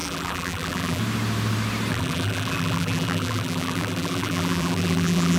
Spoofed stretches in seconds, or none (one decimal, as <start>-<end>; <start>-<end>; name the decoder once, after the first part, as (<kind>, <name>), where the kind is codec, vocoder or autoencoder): 0.0-1.0 (vocoder, BigVGAN v2); 1.9-5.4